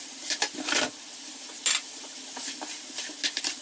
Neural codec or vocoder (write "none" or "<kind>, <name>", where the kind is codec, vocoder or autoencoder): none